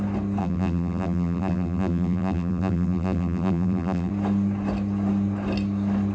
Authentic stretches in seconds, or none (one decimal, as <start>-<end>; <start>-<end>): 0.0-0.4; 4.1-6.1